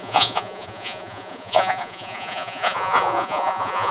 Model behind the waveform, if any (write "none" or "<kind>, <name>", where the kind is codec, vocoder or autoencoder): vocoder, Vocos